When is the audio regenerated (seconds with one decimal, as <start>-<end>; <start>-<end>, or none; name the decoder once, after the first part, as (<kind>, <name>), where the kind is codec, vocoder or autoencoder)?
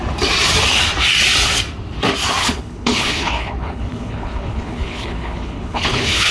2.4-6.3 (codec, HILCodec)